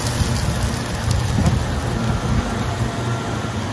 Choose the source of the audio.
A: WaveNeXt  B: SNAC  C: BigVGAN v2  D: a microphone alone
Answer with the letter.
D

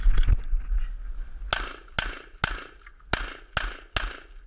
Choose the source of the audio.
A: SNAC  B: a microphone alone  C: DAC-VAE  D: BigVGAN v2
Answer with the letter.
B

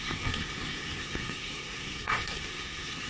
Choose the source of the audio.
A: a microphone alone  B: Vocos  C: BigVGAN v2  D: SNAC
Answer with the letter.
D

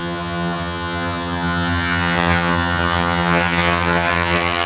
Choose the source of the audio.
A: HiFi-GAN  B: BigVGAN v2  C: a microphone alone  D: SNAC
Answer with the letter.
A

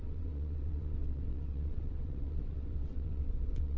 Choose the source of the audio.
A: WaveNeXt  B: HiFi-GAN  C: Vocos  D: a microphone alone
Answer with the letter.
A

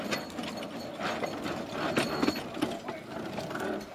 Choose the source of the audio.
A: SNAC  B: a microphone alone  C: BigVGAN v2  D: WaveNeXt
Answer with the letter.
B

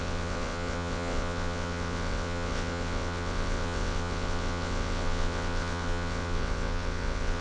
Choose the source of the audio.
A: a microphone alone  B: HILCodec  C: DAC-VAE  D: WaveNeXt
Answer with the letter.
D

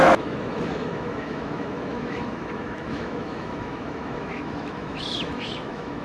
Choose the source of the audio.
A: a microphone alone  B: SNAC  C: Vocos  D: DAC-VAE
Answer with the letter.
D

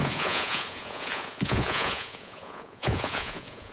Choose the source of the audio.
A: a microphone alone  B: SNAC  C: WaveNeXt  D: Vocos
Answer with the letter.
D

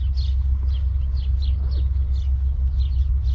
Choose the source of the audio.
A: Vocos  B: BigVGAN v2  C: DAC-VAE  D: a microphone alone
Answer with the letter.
D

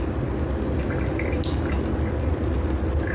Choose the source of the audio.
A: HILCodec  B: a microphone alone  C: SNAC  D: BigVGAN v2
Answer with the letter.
B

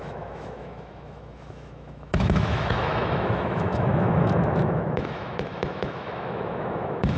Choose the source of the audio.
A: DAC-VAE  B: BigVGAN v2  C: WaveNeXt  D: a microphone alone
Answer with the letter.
A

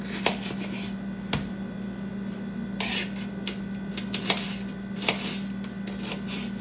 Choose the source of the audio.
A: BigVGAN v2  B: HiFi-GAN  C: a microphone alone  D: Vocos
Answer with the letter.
C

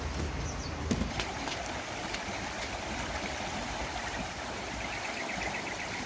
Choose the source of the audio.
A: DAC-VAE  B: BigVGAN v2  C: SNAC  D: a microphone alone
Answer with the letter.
D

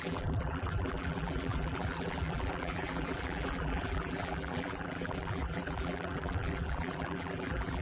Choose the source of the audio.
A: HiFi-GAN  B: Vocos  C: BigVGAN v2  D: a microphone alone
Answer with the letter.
C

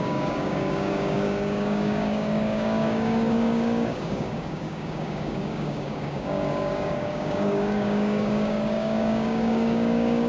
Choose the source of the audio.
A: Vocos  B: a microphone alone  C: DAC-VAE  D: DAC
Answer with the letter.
D